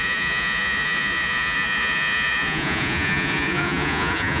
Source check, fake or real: fake